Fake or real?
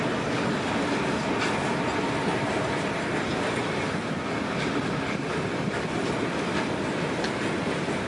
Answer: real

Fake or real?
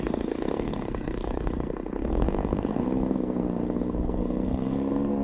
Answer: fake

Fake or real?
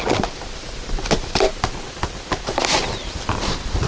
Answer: real